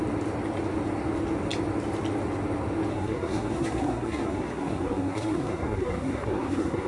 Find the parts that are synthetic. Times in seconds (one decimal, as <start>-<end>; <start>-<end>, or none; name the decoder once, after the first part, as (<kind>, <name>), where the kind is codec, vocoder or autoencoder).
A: 2.9-6.9 (codec, SNAC)